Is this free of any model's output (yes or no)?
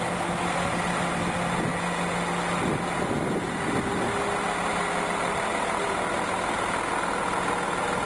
yes